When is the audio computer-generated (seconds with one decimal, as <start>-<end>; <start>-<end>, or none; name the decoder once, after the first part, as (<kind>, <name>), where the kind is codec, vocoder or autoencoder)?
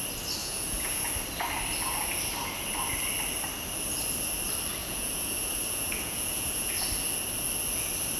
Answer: 0.4-1.1 (vocoder, Vocos); 4.8-6.7